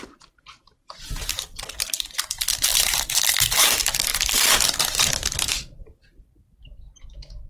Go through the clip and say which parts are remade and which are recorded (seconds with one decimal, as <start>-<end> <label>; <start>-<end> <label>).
0.0-7.5 remade